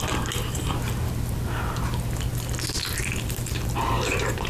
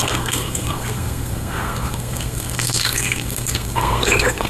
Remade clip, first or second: second